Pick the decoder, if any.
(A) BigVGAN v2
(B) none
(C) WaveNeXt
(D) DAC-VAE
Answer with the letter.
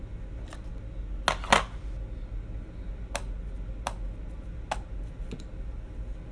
B